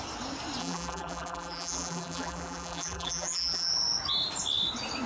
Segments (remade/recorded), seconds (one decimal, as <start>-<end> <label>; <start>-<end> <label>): 0.0-0.6 recorded; 0.6-3.7 remade; 3.7-5.1 recorded